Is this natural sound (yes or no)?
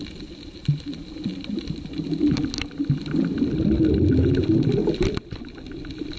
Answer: yes